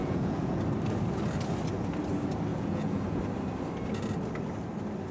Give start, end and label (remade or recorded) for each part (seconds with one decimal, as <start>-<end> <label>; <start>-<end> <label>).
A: 0.0-0.6 remade; 0.6-2.5 recorded; 2.5-3.2 remade; 3.2-5.1 recorded